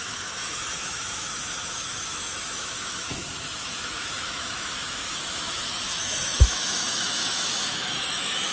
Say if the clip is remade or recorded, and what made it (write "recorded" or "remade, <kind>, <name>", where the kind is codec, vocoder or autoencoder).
remade, autoencoder, DAC-VAE